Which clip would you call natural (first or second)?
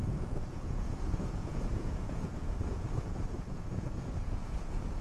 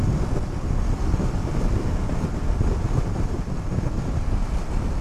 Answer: second